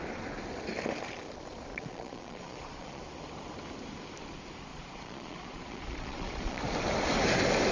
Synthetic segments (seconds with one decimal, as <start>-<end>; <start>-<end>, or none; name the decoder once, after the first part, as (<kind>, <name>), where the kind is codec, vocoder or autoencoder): 1.7-3.0 (vocoder, Vocos); 4.7-6.6